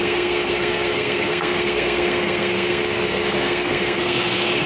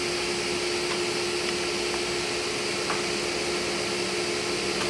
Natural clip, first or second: second